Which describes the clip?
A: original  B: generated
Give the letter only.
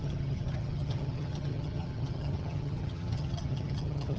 B